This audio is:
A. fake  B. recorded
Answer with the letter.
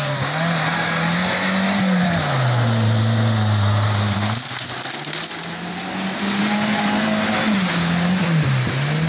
B